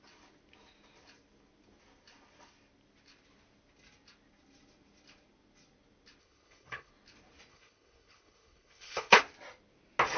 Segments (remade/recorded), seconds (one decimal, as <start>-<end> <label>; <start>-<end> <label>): 0.0-6.2 recorded; 6.2-6.9 remade; 6.9-7.5 recorded; 7.5-9.2 remade; 9.2-10.2 recorded